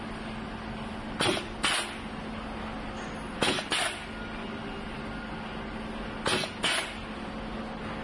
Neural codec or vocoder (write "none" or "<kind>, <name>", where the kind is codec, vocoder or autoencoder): none